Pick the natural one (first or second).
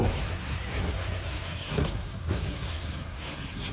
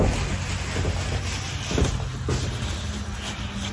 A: second